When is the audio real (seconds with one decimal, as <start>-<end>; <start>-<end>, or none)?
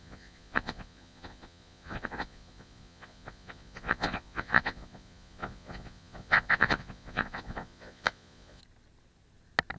8.6-9.8